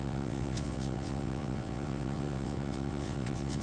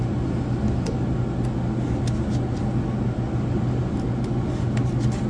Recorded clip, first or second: second